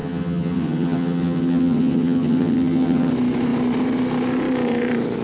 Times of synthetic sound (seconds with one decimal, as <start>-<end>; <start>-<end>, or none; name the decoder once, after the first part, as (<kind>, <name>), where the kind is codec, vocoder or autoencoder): 0.0-3.1 (vocoder, HiFi-GAN)